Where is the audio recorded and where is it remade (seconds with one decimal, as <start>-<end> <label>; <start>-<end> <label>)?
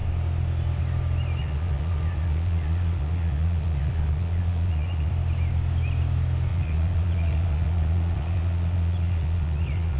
0.0-1.4 recorded; 1.4-5.1 remade; 5.1-6.5 recorded; 6.5-10.0 remade